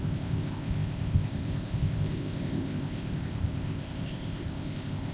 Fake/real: fake